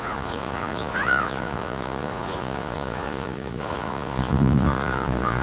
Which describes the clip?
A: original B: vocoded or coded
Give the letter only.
B